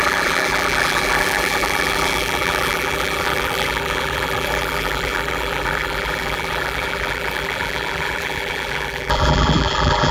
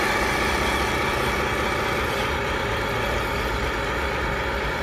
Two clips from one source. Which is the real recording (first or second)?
second